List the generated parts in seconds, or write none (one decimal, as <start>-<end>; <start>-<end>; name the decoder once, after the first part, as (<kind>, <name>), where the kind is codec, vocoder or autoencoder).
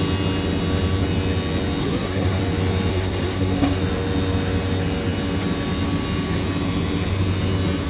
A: 1.8-2.4 (codec, SNAC); 2.9-3.8